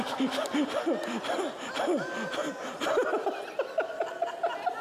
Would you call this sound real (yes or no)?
yes